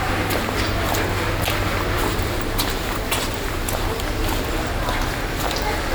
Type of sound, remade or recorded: recorded